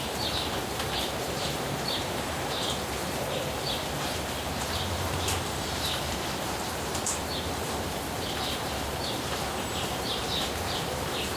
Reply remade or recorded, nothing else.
remade